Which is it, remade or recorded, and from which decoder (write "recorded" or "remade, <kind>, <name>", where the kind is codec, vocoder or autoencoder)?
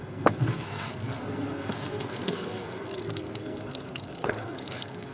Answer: remade, codec, SNAC